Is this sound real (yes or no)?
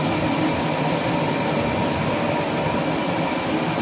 yes